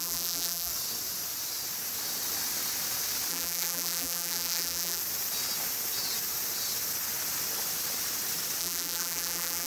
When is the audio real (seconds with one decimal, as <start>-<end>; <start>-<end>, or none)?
0.7-3.3; 5.0-8.6